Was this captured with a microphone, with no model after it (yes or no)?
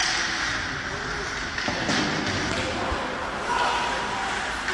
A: yes